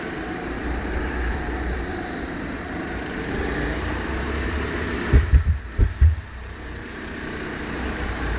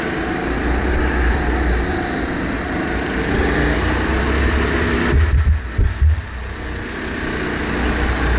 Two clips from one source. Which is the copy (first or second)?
first